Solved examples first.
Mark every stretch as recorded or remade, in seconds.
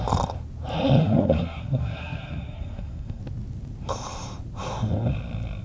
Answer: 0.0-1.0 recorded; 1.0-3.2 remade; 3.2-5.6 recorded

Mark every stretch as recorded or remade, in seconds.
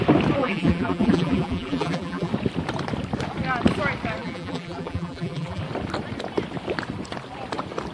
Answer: 0.0-0.4 recorded; 0.4-2.3 remade; 2.3-4.2 recorded; 4.2-5.6 remade; 5.6-7.9 recorded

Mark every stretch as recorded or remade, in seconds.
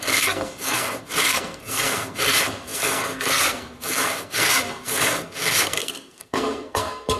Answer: 0.0-7.2 remade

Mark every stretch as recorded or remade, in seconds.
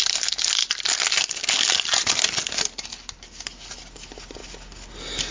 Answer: 0.0-5.3 recorded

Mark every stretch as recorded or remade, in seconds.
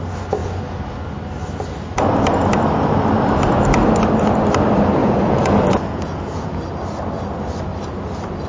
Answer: 0.0-5.0 recorded; 5.0-6.6 remade; 6.6-8.5 recorded